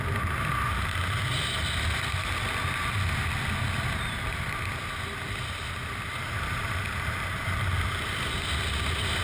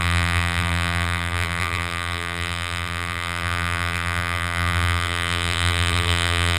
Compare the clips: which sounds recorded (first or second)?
first